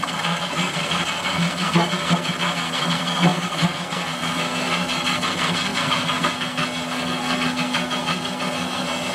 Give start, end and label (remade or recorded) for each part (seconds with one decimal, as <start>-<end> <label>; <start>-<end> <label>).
0.0-9.1 remade